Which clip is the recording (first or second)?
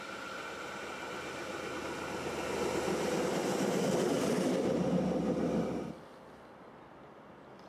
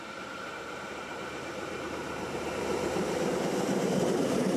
first